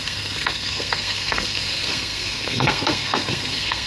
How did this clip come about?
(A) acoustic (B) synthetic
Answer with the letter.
B